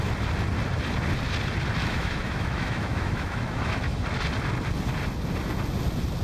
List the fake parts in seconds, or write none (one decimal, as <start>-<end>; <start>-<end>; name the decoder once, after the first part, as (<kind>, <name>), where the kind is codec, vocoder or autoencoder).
1.8-4.0 (autoencoder, DAC-VAE)